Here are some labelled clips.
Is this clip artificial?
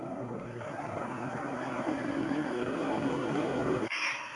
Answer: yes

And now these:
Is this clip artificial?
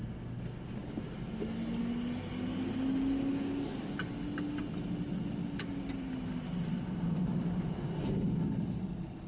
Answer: no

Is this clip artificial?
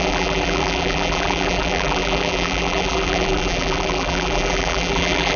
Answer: yes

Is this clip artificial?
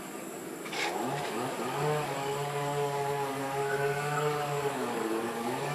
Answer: yes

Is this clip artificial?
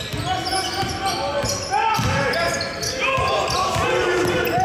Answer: no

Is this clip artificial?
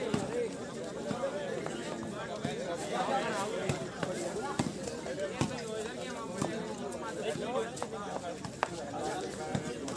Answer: no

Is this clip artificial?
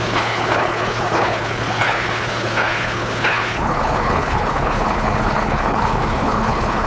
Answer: yes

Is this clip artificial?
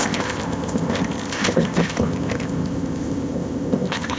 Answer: yes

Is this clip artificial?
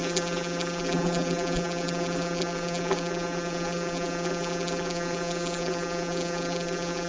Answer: yes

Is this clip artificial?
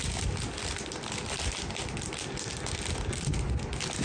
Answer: no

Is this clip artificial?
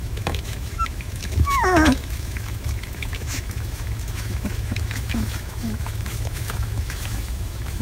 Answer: yes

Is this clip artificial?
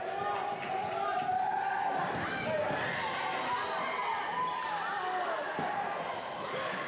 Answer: no